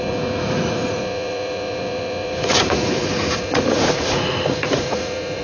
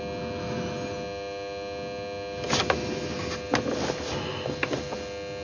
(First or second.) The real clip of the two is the second